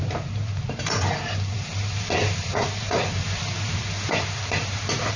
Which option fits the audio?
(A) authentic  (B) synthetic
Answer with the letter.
B